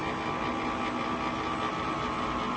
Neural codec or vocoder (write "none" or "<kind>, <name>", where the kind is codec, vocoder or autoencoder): none